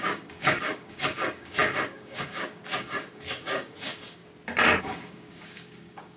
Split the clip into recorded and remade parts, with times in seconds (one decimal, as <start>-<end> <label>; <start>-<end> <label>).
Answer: 0.0-4.2 remade; 4.2-4.8 recorded; 4.8-6.2 remade

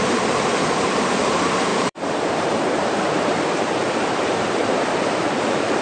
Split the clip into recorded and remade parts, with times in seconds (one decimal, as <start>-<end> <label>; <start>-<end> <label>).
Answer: 0.0-0.5 remade; 0.5-1.2 recorded; 1.2-4.6 remade; 4.6-5.2 recorded; 5.2-5.8 remade

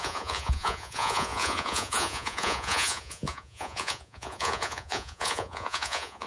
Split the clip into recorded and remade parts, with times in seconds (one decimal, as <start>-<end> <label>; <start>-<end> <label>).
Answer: 0.0-6.3 remade

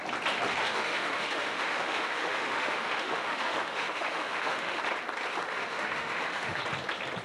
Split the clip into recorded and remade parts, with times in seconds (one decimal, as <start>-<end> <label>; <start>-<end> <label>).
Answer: 0.0-0.5 recorded; 0.5-4.8 remade; 4.8-5.3 recorded; 5.3-6.6 remade; 6.6-7.2 recorded

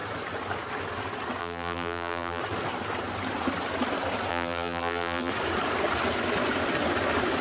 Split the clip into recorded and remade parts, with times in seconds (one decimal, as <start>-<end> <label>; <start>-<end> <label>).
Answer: 0.0-1.4 recorded; 1.4-2.4 remade; 2.4-4.3 recorded; 4.3-5.3 remade; 5.3-7.4 recorded

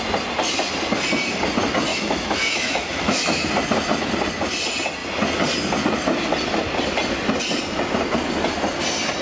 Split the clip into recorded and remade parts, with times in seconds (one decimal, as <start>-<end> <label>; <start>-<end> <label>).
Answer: 0.0-1.9 recorded; 1.9-3.5 remade; 3.5-9.2 recorded

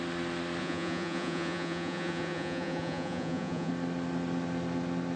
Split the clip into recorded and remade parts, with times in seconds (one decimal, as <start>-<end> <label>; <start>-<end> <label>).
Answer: 0.0-0.6 recorded; 0.6-3.7 remade; 3.7-5.2 recorded

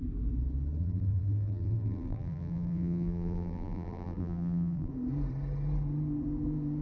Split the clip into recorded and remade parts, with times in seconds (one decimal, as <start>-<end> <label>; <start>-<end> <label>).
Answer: 0.0-0.8 recorded; 0.8-4.9 remade; 4.9-6.8 recorded